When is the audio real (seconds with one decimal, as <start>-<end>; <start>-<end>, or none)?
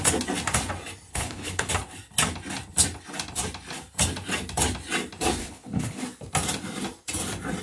0.0-1.1; 1.7-5.4; 6.0-7.6